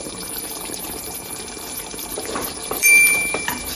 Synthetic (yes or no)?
yes